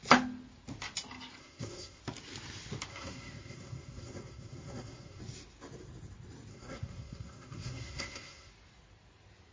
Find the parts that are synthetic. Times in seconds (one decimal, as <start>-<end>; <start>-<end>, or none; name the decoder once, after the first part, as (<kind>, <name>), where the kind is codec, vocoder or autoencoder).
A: 1.4-2.0 (codec, SNAC); 2.9-5.2; 6.5-8.5